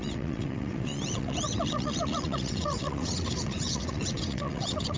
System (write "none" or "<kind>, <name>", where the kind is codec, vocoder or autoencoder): vocoder, WaveNeXt